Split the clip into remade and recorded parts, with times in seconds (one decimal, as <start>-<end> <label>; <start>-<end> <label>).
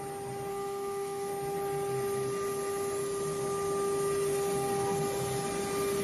0.0-0.5 recorded; 0.5-1.3 remade; 1.3-6.0 recorded